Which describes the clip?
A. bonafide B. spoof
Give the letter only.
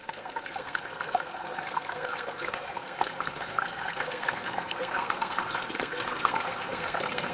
B